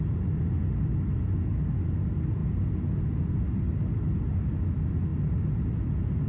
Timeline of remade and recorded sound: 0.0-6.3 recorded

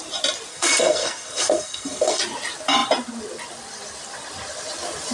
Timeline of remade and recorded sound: 0.0-0.5 recorded; 0.5-2.2 remade; 2.2-5.1 recorded

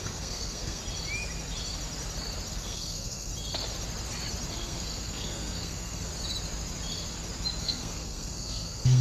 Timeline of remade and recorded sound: 0.0-0.8 remade; 0.8-2.5 recorded; 2.5-3.3 remade; 3.3-4.5 recorded; 4.5-6.1 remade; 6.1-7.6 recorded; 7.6-9.0 remade

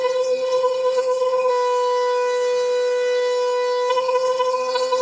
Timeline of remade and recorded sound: 0.0-1.5 remade; 1.5-3.9 recorded; 3.9-5.0 remade

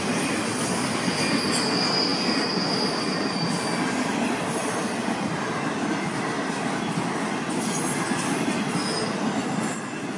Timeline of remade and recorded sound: 0.0-10.2 recorded